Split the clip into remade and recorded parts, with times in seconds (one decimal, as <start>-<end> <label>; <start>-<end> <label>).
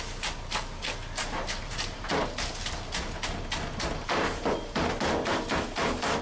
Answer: 0.0-1.2 recorded; 1.2-2.1 remade; 2.1-6.2 recorded